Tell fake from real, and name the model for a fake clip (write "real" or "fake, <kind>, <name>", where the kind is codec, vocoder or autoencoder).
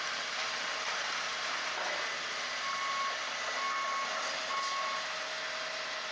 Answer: real